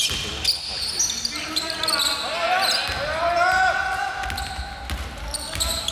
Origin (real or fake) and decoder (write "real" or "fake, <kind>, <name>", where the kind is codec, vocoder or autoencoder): real